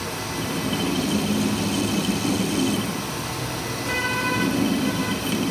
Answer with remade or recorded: recorded